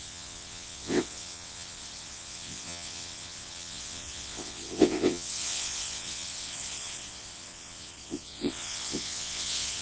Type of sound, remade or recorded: remade